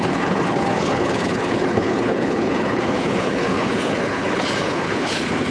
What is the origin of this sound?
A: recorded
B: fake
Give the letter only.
B